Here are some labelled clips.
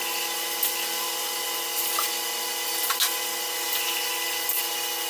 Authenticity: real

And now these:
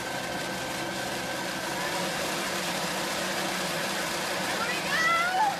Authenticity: real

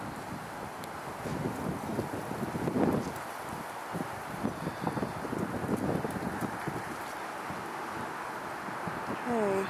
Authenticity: real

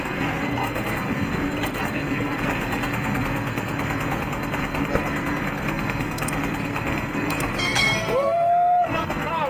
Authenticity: fake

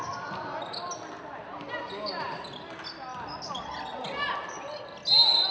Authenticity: real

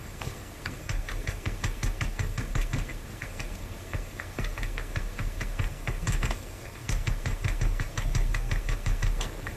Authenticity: fake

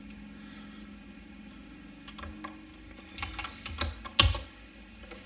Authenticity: real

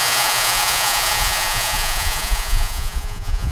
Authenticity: fake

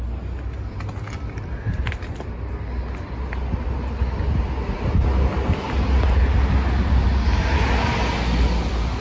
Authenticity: real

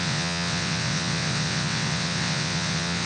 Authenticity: fake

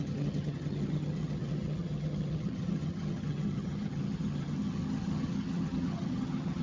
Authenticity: fake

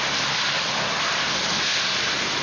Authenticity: fake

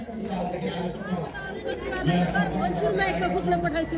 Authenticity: real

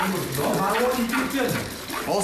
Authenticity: real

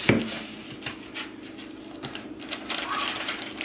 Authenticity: real